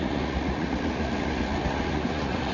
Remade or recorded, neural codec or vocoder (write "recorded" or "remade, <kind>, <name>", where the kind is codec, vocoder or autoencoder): remade, vocoder, Vocos